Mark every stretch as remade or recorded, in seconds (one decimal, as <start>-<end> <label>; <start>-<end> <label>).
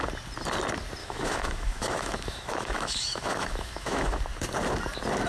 0.0-1.0 recorded; 1.0-4.2 remade; 4.2-5.3 recorded